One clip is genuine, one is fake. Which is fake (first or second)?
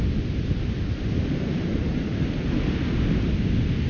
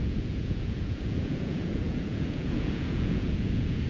second